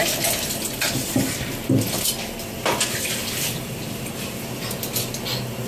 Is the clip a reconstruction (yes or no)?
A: no